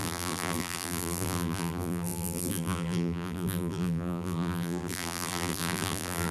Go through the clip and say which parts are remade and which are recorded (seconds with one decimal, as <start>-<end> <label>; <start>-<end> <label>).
0.0-6.3 remade